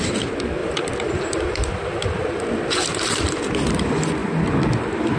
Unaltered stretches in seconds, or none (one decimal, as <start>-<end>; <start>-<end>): 0.0-0.6; 3.7-5.2